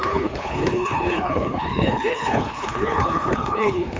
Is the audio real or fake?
fake